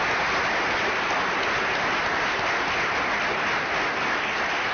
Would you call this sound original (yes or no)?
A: yes